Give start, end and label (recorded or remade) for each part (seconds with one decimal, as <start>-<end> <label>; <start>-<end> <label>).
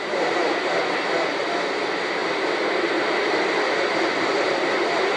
0.0-2.2 recorded; 2.2-4.5 remade; 4.5-5.2 recorded